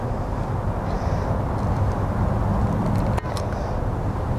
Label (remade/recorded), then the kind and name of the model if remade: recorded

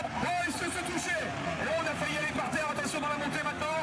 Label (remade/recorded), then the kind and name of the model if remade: remade, vocoder, BigVGAN v2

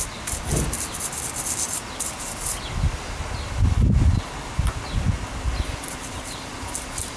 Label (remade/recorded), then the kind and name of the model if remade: recorded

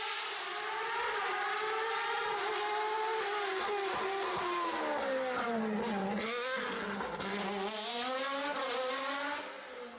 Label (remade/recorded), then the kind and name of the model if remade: recorded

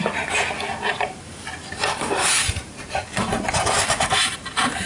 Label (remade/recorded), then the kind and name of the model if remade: remade, vocoder, BigVGAN v2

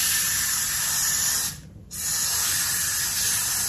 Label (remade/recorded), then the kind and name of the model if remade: remade, vocoder, BigVGAN v2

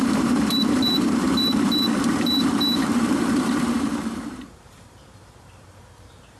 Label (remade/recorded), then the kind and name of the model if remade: remade, vocoder, BigVGAN v2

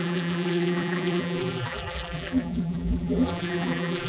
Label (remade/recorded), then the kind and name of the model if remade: remade, vocoder, BigVGAN v2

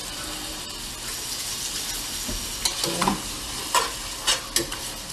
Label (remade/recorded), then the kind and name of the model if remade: recorded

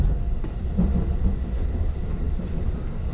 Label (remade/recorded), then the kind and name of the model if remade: recorded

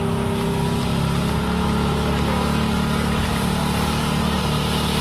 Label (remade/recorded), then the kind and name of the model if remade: recorded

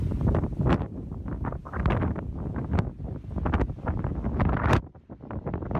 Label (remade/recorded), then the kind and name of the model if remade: recorded